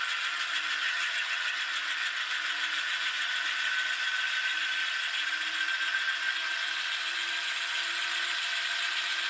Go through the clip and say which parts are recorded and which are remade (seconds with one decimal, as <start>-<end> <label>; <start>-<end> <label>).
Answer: 0.0-0.8 recorded; 0.8-1.6 remade; 1.6-9.3 recorded